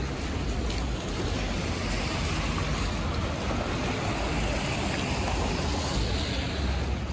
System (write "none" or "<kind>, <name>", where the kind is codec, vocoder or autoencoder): none